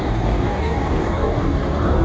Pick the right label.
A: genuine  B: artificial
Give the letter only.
B